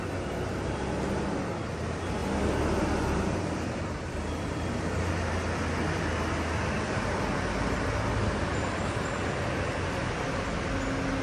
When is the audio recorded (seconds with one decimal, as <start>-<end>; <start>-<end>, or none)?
0.0-11.2